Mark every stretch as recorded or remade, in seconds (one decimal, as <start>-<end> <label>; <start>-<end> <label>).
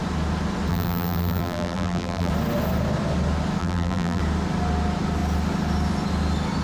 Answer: 0.0-0.7 recorded; 0.7-2.3 remade; 2.3-3.6 recorded; 3.6-4.2 remade; 4.2-6.6 recorded